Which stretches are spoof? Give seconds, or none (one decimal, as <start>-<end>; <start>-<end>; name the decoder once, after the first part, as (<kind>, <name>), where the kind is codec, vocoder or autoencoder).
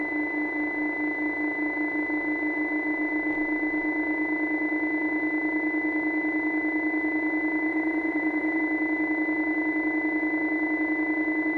7.7-8.6 (vocoder, Vocos)